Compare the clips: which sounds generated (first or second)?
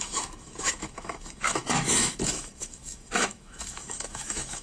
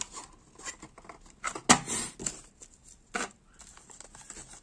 first